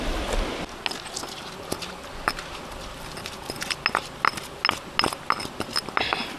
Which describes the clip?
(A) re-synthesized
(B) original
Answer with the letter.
B